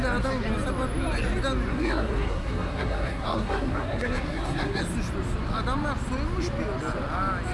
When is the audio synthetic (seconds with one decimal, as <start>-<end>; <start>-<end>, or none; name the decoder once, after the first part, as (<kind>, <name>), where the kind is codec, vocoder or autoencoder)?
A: 1.7-4.8 (codec, SNAC)